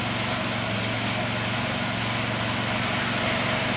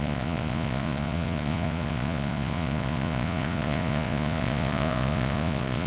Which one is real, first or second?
first